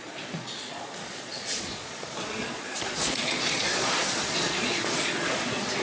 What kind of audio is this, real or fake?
fake